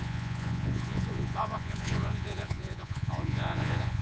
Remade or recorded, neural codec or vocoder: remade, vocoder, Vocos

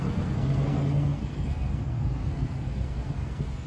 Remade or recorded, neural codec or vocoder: remade, codec, SNAC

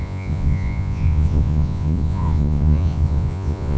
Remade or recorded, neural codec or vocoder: remade, vocoder, Vocos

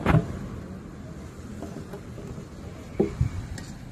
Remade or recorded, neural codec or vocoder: recorded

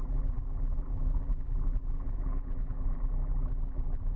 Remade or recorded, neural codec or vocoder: remade, vocoder, BigVGAN v2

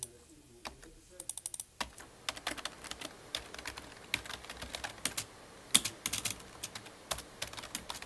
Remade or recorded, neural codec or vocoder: recorded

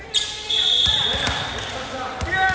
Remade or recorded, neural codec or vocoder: remade, vocoder, BigVGAN v2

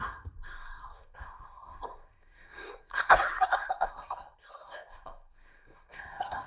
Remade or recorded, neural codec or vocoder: remade, codec, SNAC